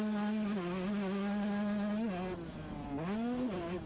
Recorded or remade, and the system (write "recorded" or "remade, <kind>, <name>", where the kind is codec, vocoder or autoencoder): recorded